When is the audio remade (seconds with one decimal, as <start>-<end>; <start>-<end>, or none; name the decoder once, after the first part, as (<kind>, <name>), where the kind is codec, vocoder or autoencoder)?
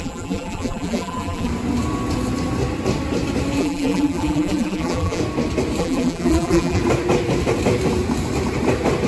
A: 0.0-1.5 (vocoder, BigVGAN v2); 3.6-5.2; 5.8-6.8